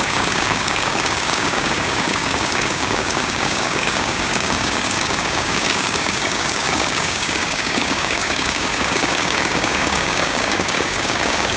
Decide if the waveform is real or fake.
fake